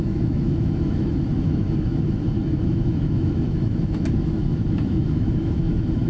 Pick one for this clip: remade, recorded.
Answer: remade